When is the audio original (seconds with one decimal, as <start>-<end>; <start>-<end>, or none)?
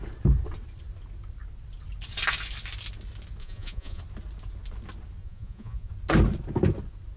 0.0-3.4; 4.0-5.2; 5.9-7.2